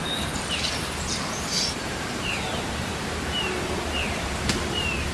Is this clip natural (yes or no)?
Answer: no